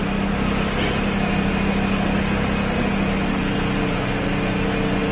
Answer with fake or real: real